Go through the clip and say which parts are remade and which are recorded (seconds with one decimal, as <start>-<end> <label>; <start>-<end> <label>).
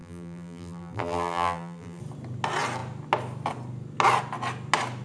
0.0-2.0 remade; 2.0-5.0 recorded